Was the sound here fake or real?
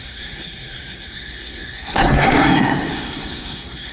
fake